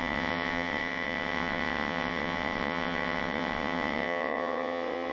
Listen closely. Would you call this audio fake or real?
fake